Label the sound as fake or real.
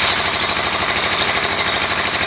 real